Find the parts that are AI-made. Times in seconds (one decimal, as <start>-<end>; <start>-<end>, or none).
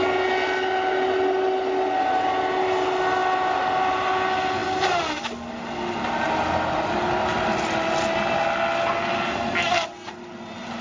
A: none